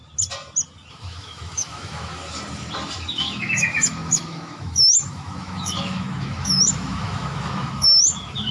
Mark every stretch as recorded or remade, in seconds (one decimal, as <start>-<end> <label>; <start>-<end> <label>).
0.0-0.9 recorded; 0.9-2.2 remade; 2.2-3.1 recorded; 3.1-8.5 remade